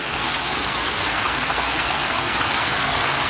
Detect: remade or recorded remade